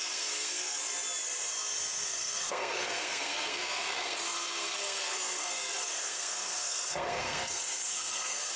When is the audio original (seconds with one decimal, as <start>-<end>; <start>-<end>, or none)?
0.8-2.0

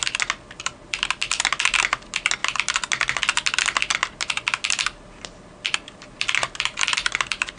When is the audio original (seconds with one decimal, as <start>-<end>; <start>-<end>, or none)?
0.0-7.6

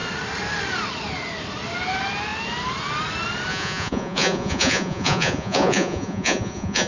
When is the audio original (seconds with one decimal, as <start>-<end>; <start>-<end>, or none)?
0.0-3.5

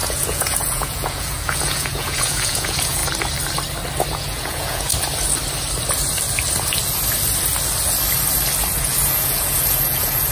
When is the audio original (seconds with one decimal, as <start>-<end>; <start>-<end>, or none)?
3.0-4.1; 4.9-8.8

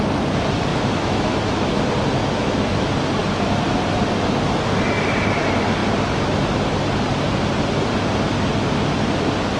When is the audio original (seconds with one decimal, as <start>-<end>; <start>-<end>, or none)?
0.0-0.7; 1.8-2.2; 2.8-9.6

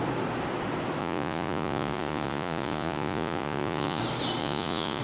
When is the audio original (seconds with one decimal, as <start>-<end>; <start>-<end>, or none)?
0.0-1.0; 4.0-4.4